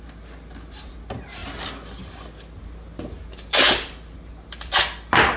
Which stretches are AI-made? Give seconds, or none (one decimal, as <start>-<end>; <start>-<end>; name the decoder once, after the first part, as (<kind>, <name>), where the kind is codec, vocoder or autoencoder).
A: none